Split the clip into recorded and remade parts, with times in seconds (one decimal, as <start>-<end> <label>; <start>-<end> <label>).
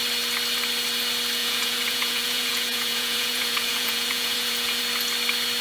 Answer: 0.0-1.4 recorded; 1.4-4.8 remade; 4.8-5.6 recorded